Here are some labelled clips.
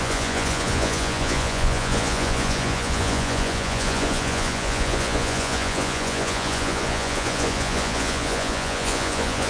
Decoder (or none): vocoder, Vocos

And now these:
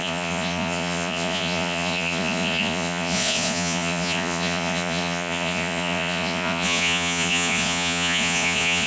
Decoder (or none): vocoder, Vocos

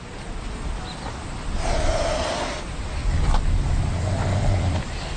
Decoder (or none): none